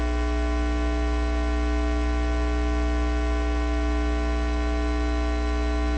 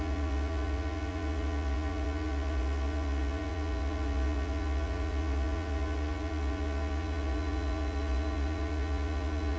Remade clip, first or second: second